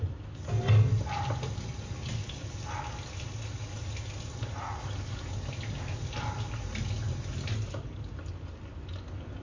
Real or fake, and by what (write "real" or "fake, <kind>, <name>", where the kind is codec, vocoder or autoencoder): real